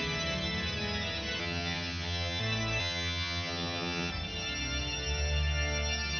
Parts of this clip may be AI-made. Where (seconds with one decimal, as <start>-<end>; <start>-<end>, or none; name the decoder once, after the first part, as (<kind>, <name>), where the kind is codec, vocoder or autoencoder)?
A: 1.4-2.4 (vocoder, HiFi-GAN); 2.8-4.1